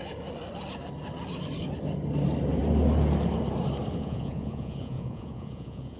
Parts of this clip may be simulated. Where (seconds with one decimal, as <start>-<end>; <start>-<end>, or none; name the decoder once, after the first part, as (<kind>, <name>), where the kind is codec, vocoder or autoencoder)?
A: 4.0-6.0 (vocoder, Vocos)